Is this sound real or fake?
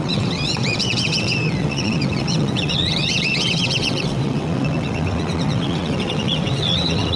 fake